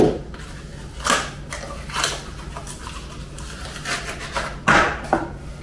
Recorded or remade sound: recorded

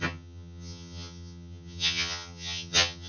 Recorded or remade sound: remade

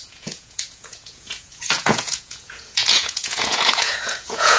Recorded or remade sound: remade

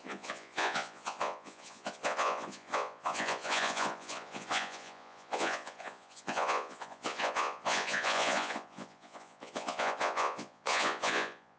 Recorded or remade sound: remade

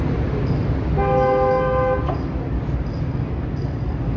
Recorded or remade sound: recorded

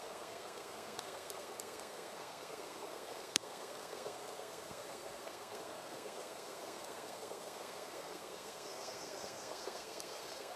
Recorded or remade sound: remade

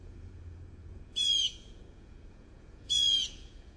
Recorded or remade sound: remade